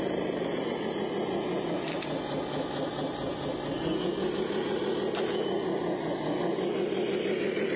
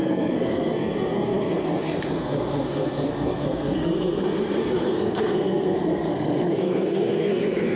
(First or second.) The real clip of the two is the first